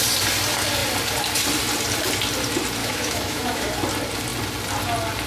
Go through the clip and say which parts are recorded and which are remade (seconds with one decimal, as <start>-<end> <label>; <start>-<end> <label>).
0.0-2.8 recorded; 2.8-3.7 remade; 3.7-5.3 recorded